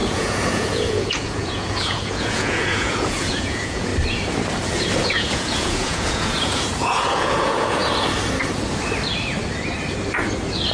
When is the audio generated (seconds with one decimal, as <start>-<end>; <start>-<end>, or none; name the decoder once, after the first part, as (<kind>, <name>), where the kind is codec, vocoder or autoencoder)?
0.0-3.9 (vocoder, Vocos); 5.0-7.8